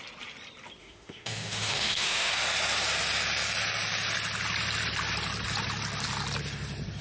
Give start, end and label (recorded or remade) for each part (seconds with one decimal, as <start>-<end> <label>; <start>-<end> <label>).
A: 0.0-0.8 recorded; 0.8-2.3 remade; 2.3-7.0 recorded